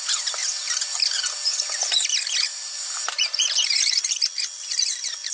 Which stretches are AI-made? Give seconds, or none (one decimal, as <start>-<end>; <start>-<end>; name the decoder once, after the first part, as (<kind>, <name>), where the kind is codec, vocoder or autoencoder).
2.5-3.8 (vocoder, BigVGAN v2)